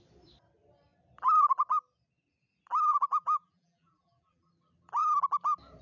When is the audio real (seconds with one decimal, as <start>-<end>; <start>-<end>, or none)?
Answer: 0.0-2.9; 4.5-5.8